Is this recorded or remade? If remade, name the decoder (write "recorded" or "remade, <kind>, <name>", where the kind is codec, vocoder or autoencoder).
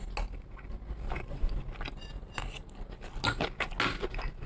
recorded